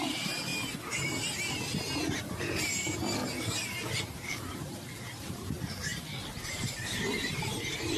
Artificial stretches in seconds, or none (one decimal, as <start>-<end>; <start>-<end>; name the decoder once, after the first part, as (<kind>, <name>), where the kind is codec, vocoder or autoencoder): 0.0-0.5 (vocoder, BigVGAN v2); 2.3-3.2; 3.9-5.9; 6.4-8.0